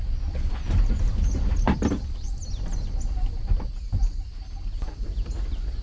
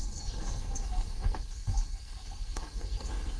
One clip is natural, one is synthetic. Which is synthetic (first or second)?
second